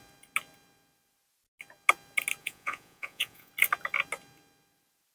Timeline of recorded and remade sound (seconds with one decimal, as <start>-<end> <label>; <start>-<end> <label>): 0.0-2.4 recorded; 2.4-3.5 remade; 3.5-5.1 recorded